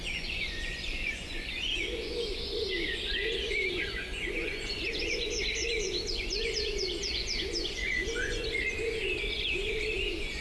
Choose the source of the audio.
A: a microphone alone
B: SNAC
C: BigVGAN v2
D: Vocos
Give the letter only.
D